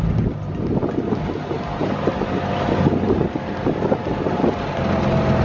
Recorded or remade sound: recorded